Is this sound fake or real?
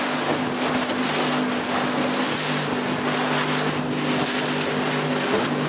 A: real